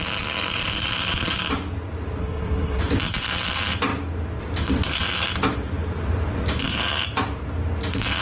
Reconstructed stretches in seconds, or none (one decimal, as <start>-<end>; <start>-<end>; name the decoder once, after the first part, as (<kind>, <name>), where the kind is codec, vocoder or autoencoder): 2.2-2.8 (codec, SNAC)